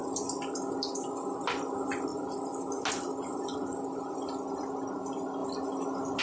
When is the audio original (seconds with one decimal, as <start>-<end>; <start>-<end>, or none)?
0.0-6.2